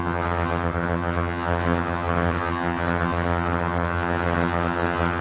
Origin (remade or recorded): remade